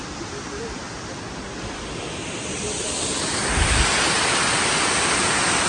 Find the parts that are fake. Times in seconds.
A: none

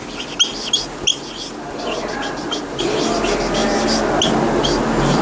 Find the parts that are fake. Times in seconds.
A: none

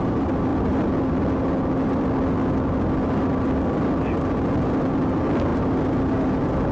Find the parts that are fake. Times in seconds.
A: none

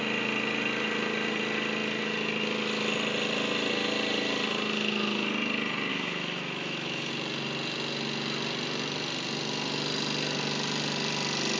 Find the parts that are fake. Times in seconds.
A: 5.9-7.1 (autoencoder, DAC-VAE)

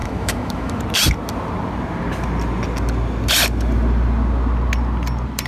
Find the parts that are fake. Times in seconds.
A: 0.0-0.8 (autoencoder, DAC-VAE)